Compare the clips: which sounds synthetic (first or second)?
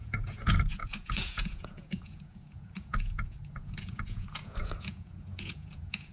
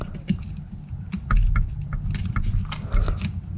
first